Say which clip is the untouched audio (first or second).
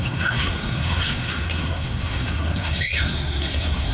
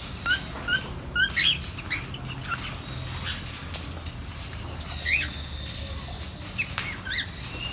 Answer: second